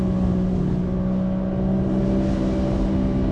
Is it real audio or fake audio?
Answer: real